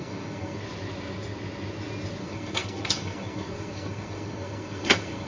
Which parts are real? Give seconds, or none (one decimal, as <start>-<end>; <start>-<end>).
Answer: 0.6-2.2